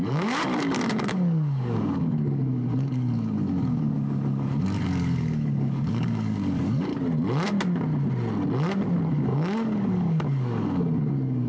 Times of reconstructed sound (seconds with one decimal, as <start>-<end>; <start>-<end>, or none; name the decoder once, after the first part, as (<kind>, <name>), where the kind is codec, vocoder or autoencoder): 0.0-6.9 (codec, DAC); 9.1-11.5